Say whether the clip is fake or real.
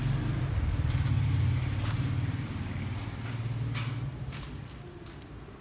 real